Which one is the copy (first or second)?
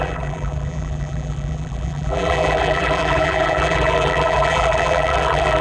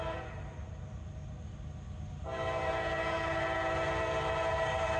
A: first